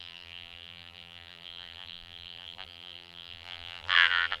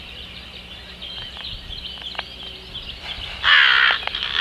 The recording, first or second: second